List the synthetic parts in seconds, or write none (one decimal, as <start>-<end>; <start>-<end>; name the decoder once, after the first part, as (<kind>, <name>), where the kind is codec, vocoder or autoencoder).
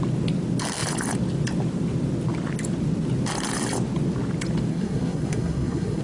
4.7-6.0 (codec, SNAC)